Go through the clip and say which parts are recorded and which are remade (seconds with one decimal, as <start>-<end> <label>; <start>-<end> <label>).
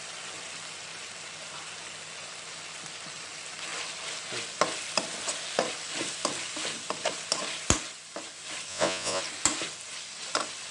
0.0-8.7 recorded; 8.7-9.2 remade; 9.2-10.7 recorded